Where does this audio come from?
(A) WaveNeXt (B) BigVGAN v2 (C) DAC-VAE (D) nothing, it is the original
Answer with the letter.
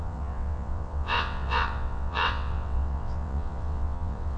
A